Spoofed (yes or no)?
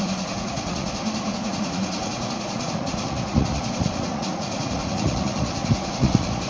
yes